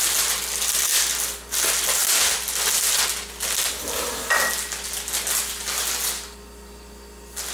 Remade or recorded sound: recorded